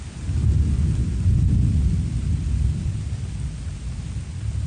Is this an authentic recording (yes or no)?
yes